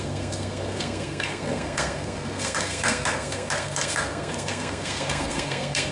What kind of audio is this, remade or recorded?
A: remade